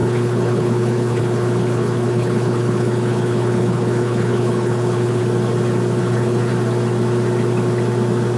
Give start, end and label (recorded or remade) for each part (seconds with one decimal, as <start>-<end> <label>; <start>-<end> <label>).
0.0-5.2 remade; 5.2-6.0 recorded; 6.0-6.5 remade; 6.5-8.4 recorded